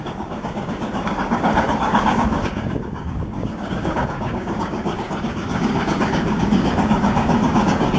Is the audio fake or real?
fake